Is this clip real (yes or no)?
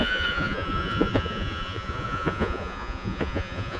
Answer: no